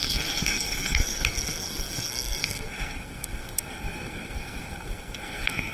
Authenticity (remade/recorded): remade